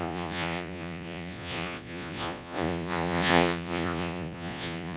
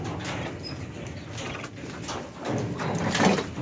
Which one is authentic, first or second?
second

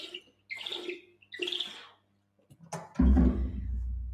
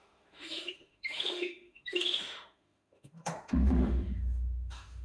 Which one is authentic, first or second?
first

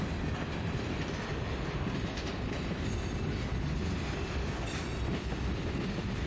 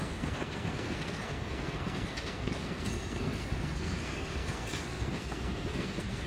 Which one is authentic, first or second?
first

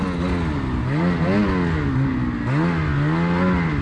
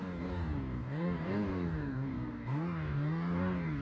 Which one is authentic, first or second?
first